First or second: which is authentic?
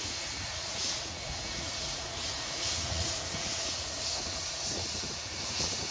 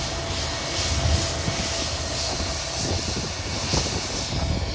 second